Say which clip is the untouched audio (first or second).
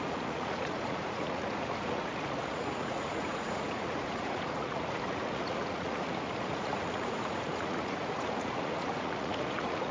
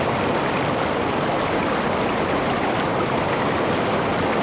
second